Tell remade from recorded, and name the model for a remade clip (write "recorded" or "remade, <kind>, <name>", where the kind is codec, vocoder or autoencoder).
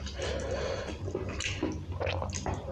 recorded